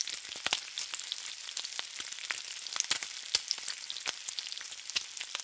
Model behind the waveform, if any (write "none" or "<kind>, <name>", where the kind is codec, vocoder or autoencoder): none